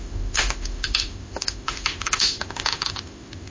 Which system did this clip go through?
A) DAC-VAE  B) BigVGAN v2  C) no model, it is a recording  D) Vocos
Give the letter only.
A